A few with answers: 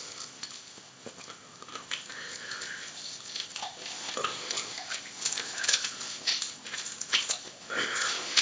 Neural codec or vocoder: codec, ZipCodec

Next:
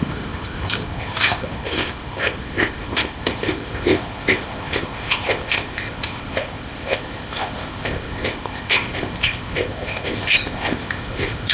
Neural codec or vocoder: codec, ZipCodec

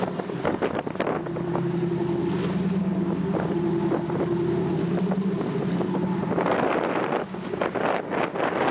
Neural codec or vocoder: none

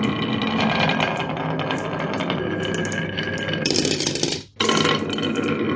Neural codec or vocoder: none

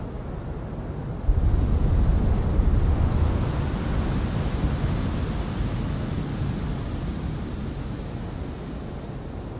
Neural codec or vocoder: none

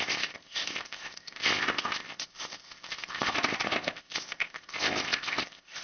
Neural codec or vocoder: codec, ZipCodec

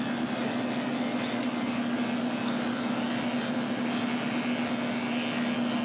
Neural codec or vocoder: none